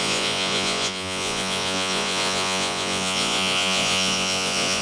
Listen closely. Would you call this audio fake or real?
fake